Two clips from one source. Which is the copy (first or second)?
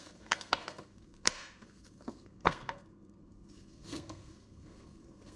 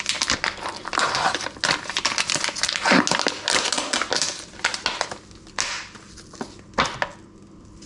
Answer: first